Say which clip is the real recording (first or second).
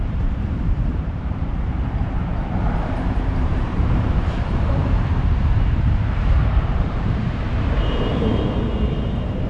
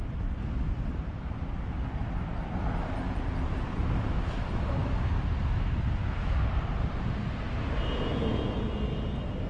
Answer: second